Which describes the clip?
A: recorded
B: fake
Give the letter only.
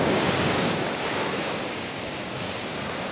B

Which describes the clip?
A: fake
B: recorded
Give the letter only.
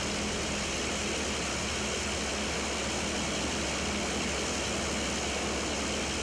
B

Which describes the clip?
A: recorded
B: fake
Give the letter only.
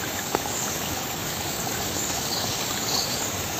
B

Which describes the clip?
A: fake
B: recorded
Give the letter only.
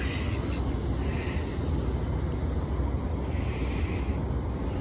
B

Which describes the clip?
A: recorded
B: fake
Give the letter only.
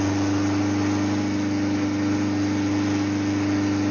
A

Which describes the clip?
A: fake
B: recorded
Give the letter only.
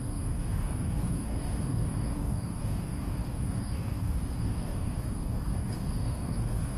A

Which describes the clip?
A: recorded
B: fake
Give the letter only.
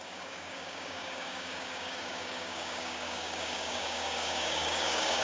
B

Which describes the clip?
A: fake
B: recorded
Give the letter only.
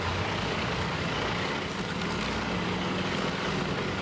A